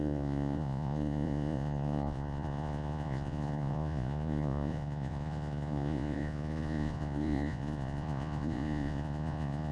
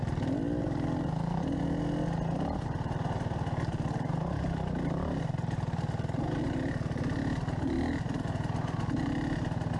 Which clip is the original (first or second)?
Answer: second